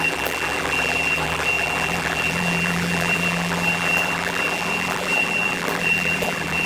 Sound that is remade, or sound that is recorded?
remade